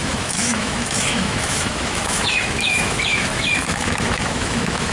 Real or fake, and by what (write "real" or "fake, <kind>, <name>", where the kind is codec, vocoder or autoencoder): fake, autoencoder, DAC-VAE